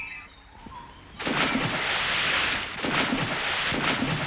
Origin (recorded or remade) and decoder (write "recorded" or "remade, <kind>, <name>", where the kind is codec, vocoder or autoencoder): recorded